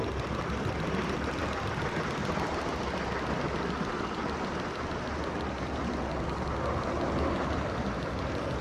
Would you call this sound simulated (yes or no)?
no